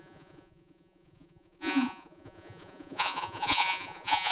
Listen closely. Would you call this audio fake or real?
fake